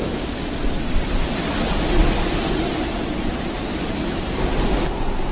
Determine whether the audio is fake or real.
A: real